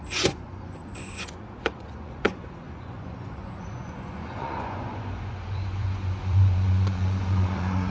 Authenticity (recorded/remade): remade